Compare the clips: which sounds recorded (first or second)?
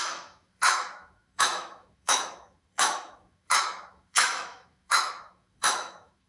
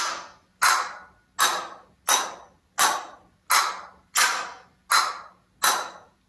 second